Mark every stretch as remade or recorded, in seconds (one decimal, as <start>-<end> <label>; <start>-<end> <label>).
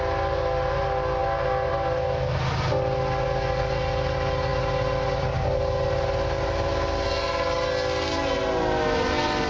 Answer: 0.0-9.5 recorded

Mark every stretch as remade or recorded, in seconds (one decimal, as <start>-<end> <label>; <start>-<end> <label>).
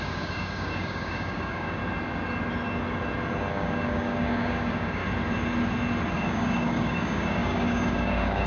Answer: 0.0-1.8 remade; 1.8-3.5 recorded; 3.5-5.0 remade; 5.0-6.1 recorded; 6.1-8.5 remade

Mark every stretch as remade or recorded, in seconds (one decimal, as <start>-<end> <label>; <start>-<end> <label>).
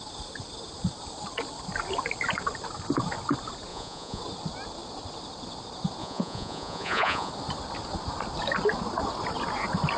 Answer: 0.0-3.7 recorded; 3.7-4.2 remade; 4.2-6.0 recorded; 6.0-7.3 remade; 7.3-10.0 recorded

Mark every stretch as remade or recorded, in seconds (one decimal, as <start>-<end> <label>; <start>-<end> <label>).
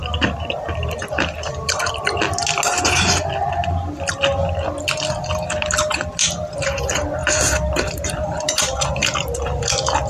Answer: 0.0-7.2 recorded; 7.2-8.9 remade; 8.9-10.1 recorded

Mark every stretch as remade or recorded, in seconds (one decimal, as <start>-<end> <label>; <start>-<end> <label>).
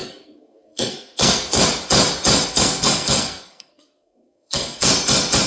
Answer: 0.0-1.6 remade; 1.6-2.5 recorded; 2.5-4.9 remade; 4.9-5.5 recorded